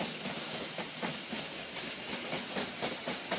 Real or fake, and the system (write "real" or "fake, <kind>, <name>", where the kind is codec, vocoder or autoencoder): real